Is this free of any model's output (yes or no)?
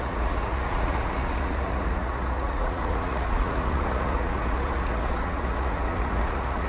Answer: no